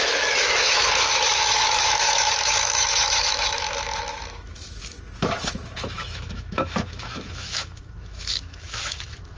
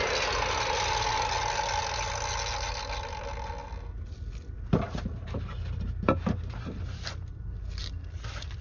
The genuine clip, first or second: second